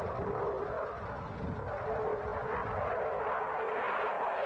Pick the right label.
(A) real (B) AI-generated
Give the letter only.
A